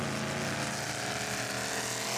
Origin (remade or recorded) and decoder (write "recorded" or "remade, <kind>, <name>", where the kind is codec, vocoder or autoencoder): recorded